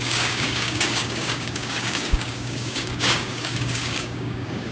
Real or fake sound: fake